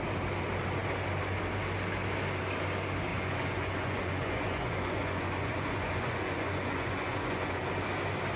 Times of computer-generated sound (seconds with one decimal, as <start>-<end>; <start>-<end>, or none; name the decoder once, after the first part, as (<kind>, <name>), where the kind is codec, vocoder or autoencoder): 3.1-7.7 (vocoder, Vocos)